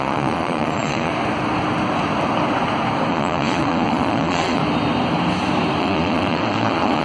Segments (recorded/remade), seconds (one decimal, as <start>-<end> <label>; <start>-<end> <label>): 0.0-1.1 remade; 1.1-3.1 recorded; 3.1-4.6 remade; 4.6-5.8 recorded; 5.8-7.0 remade